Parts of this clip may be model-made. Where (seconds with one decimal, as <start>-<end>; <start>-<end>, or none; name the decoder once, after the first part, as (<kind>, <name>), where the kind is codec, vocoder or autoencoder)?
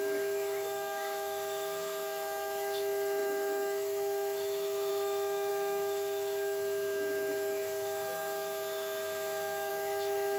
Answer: 0.0-10.4 (autoencoder, DAC-VAE)